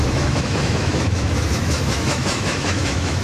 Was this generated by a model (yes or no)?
yes